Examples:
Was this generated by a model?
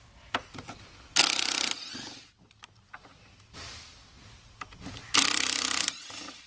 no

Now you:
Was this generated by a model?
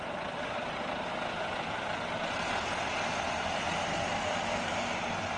no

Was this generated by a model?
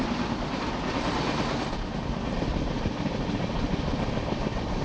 no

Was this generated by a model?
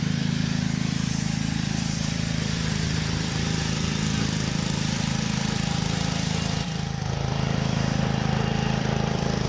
yes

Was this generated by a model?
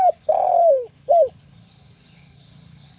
yes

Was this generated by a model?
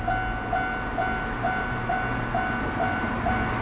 no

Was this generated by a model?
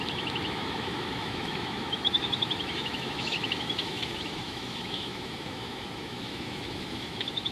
yes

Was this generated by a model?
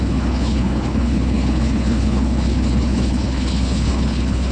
yes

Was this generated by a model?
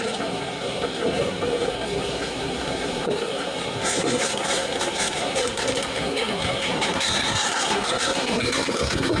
yes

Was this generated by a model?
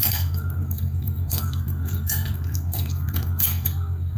yes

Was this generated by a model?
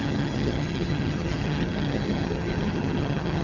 yes